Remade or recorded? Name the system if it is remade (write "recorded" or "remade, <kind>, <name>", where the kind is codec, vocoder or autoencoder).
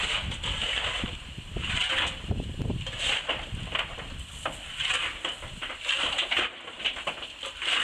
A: recorded